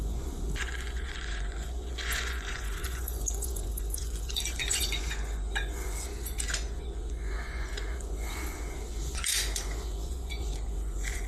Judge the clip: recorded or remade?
remade